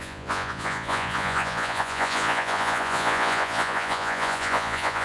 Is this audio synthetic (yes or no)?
yes